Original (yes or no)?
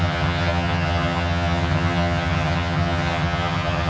no